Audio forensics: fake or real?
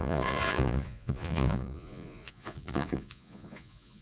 fake